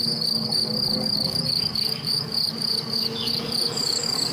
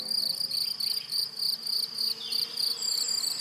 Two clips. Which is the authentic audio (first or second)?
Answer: second